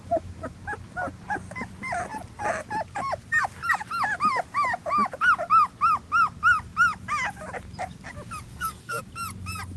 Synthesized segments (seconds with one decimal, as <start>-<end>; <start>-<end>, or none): 8.5-9.0